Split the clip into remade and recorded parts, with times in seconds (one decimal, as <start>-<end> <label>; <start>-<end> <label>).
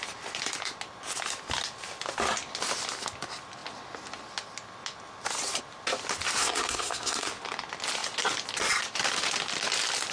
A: 0.0-6.4 recorded; 6.4-7.3 remade; 7.3-10.1 recorded